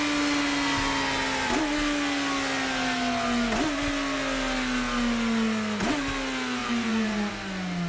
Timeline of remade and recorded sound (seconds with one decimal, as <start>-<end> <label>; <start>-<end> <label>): 0.0-6.6 recorded; 6.6-7.3 remade; 7.3-7.9 recorded